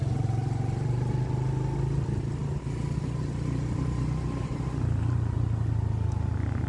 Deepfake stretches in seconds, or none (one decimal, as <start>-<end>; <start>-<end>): none